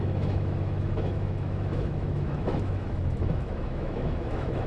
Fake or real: fake